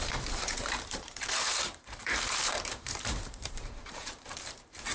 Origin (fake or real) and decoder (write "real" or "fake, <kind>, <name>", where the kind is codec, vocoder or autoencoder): fake, vocoder, BigVGAN v2